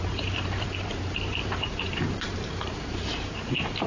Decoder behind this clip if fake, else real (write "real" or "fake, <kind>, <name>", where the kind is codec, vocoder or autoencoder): fake, vocoder, BigVGAN v2